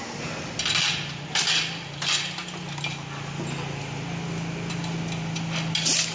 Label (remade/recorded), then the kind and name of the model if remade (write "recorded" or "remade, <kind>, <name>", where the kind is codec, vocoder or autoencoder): recorded